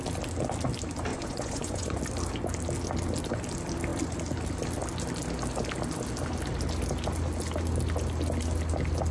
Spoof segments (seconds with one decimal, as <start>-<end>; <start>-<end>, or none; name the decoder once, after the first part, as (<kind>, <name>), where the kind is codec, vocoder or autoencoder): 1.1-2.0 (vocoder, Vocos)